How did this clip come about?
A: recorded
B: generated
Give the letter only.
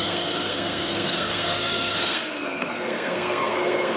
B